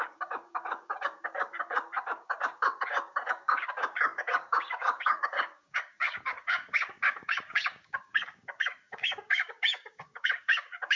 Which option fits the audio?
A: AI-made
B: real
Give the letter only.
A